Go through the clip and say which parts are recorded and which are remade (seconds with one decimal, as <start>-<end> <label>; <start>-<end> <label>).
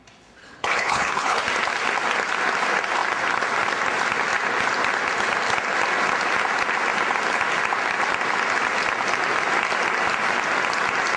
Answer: 0.0-0.4 recorded; 0.4-1.4 remade; 1.4-11.2 recorded